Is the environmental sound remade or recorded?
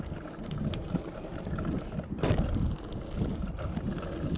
recorded